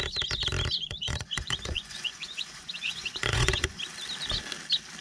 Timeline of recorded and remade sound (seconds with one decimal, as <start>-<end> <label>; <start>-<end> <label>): 0.0-0.8 recorded; 0.8-3.8 remade; 3.8-5.0 recorded